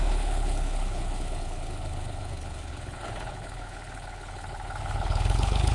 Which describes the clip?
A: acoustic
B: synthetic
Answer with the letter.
B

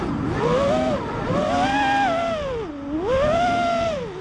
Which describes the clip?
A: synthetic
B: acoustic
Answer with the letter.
B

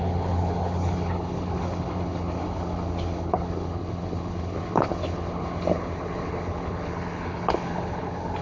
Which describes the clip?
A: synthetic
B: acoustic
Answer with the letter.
A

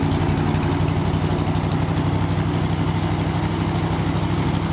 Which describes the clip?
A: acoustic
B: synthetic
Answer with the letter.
A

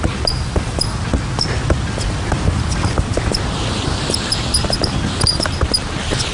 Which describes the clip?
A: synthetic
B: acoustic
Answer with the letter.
B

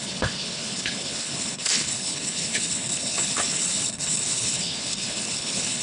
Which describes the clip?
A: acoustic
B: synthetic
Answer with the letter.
B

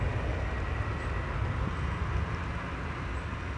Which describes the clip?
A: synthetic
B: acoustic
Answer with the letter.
B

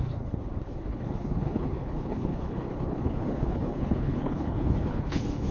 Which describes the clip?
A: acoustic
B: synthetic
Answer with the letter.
B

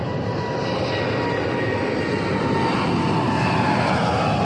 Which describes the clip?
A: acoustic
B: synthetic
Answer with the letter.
A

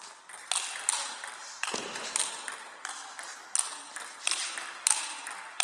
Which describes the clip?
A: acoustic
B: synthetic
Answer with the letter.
A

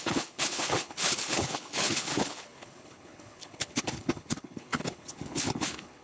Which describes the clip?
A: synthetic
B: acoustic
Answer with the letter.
A